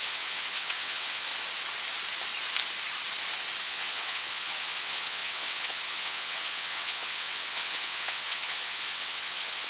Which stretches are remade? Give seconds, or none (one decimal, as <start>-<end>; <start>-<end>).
0.0-1.3; 3.6-9.7